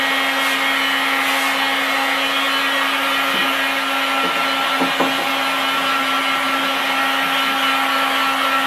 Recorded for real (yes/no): yes